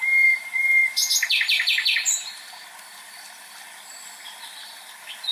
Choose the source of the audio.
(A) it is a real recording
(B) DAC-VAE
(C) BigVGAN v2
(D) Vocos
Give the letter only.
A